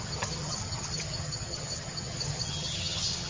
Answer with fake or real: fake